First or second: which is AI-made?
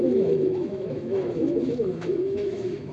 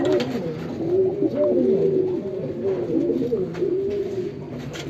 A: first